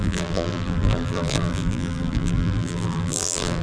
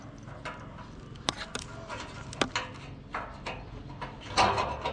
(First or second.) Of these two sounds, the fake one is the first